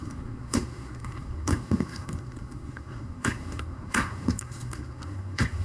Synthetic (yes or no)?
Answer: yes